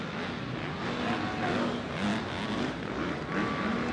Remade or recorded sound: recorded